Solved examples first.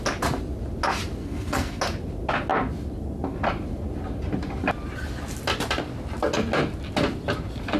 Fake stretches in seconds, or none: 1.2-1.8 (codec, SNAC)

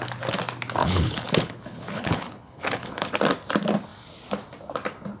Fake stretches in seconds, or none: 0.8-3.1 (codec, HILCodec)